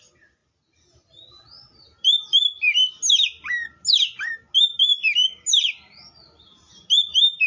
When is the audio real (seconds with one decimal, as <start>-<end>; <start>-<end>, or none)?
0.0-7.5